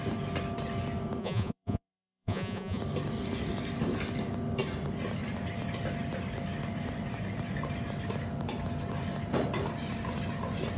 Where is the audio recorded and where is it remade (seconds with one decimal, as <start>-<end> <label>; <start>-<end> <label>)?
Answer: 0.0-1.2 recorded; 1.2-2.8 remade; 2.8-10.8 recorded